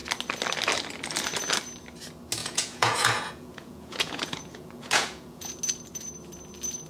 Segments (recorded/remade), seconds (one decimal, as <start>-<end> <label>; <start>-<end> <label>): 0.0-2.4 recorded; 2.4-5.6 remade; 5.6-6.9 recorded